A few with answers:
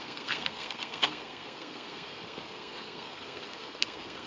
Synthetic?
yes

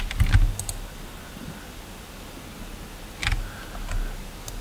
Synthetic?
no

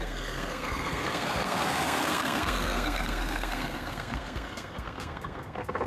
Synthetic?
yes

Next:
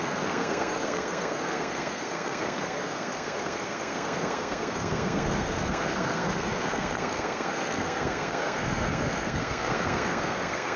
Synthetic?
yes